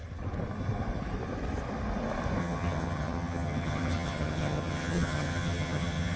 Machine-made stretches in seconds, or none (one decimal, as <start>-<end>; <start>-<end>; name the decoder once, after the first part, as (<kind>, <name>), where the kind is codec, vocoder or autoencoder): 2.4-6.2 (vocoder, HiFi-GAN)

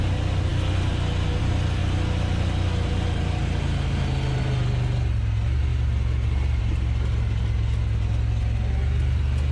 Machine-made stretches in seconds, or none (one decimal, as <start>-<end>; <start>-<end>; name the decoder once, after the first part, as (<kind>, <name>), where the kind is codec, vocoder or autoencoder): none

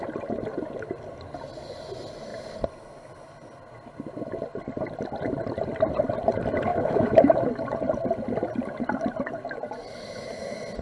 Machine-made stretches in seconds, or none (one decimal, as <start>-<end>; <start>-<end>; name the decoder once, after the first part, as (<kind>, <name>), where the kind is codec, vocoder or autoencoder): 6.7-7.5 (autoencoder, DAC-VAE)

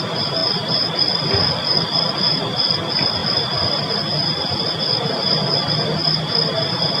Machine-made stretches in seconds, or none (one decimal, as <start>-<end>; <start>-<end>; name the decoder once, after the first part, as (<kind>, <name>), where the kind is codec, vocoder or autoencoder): none

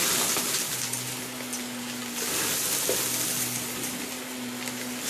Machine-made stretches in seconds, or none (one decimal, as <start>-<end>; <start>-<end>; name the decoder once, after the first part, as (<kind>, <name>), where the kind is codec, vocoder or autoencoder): none

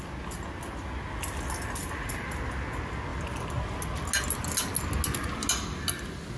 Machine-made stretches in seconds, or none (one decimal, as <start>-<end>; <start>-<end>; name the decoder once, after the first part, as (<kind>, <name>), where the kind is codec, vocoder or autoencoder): none

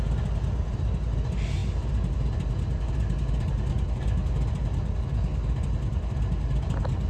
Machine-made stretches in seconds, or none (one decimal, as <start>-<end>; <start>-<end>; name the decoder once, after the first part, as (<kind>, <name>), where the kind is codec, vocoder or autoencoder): none

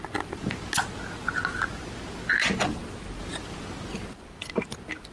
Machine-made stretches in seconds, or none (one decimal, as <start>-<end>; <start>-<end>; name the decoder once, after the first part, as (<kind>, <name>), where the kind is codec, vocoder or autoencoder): none